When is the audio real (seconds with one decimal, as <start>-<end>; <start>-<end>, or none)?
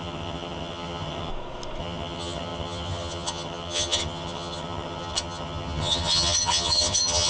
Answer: 1.3-1.8